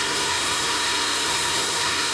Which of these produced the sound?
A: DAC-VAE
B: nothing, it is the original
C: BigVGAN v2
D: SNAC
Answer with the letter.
D